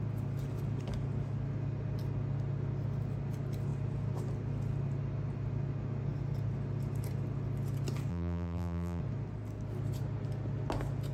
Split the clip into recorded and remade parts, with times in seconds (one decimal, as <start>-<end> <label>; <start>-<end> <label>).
0.0-8.1 recorded; 8.1-9.0 remade; 9.0-11.1 recorded